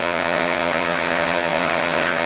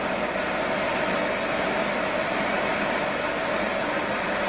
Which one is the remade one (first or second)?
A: first